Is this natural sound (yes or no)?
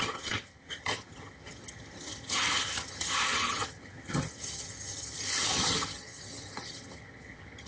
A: no